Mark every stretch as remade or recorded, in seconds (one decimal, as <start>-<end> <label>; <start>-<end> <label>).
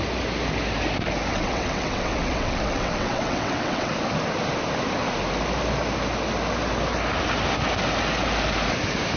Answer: 0.0-1.3 recorded; 1.3-3.9 remade; 3.9-9.2 recorded